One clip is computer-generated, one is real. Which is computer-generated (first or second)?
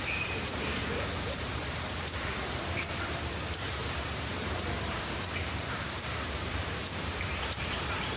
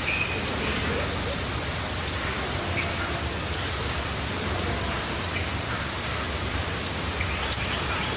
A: first